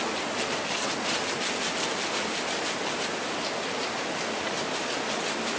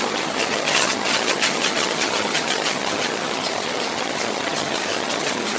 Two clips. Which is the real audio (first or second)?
first